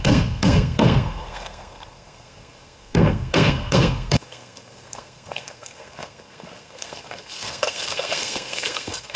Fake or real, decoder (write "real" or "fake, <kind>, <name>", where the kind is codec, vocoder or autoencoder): fake, codec, SNAC